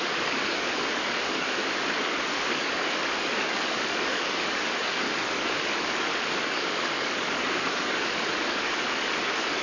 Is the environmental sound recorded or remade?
remade